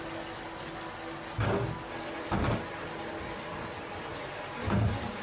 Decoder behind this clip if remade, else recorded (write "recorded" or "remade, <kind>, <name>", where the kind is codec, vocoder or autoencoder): recorded